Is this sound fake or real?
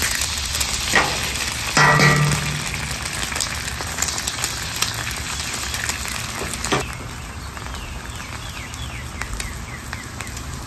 real